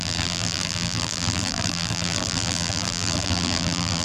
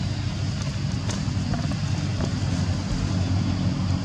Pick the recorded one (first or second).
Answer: second